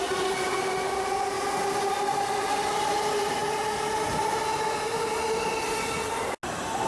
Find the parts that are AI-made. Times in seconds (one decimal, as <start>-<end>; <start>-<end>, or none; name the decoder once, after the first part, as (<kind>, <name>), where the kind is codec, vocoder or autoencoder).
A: none